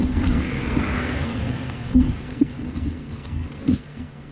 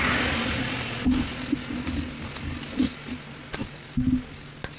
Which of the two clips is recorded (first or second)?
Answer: second